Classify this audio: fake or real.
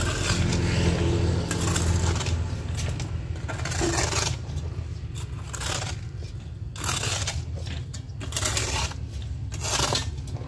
real